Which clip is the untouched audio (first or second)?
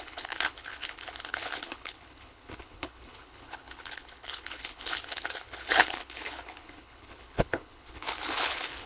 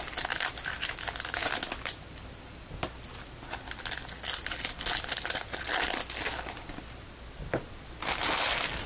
second